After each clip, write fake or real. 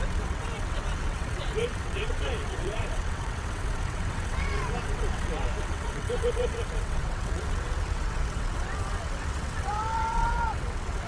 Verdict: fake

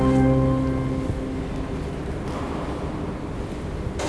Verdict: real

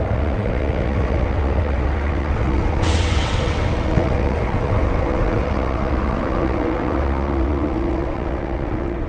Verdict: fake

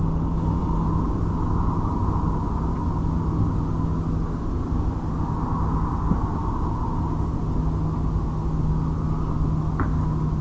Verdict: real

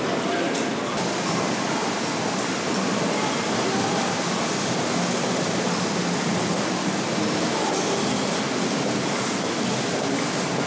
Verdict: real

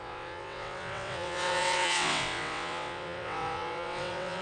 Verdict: fake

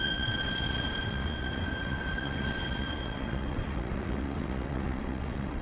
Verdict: fake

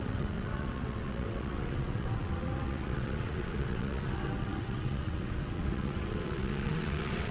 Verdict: fake